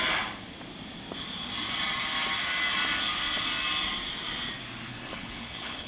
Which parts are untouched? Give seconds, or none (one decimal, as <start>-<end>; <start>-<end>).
0.0-4.9